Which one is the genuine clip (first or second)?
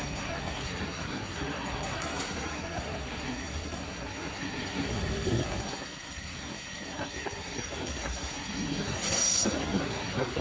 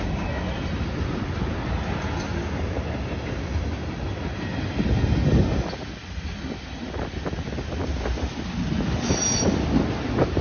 second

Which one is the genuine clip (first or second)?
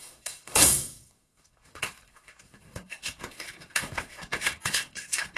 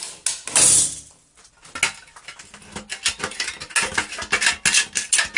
second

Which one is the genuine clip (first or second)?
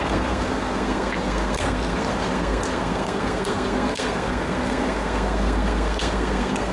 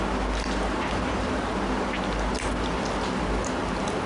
second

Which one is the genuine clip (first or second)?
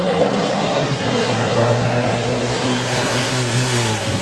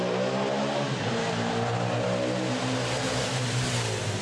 second